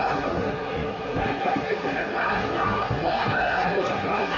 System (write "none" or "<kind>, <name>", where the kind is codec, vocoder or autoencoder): codec, SNAC